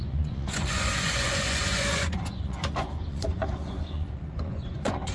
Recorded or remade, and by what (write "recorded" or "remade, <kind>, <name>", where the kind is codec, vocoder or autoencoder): remade, vocoder, Vocos